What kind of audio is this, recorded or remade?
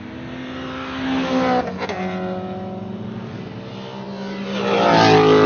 recorded